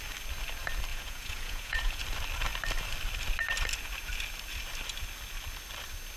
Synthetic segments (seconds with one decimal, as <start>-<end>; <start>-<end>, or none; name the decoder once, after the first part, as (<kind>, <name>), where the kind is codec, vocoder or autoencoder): 0.9-2.0 (vocoder, Vocos)